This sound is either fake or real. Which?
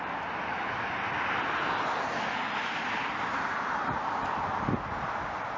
real